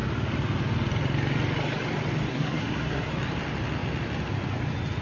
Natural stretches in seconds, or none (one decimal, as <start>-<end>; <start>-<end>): 0.0-2.3; 3.1-5.0